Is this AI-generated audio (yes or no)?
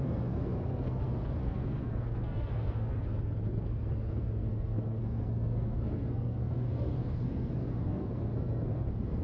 yes